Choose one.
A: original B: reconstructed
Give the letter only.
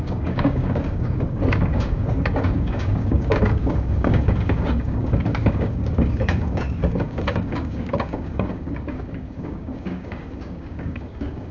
B